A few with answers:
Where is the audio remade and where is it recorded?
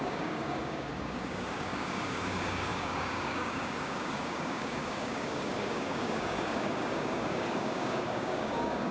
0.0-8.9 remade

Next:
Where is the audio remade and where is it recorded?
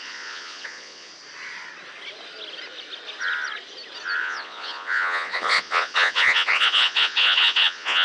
0.0-1.1 remade; 1.1-4.2 recorded; 4.2-8.0 remade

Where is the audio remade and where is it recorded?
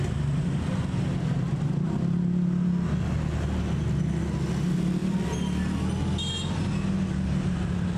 0.0-8.0 recorded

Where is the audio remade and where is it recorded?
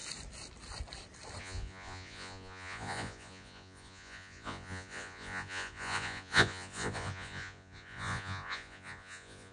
0.0-1.4 recorded; 1.4-9.5 remade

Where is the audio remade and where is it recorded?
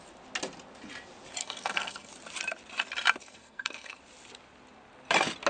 0.0-1.4 recorded; 1.4-2.1 remade; 2.1-3.2 recorded; 3.2-4.0 remade; 4.0-5.5 recorded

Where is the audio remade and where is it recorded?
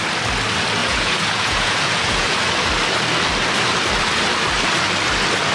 0.0-0.8 recorded; 0.8-2.4 remade; 2.4-5.5 recorded